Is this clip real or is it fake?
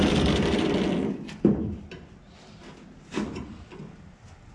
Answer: real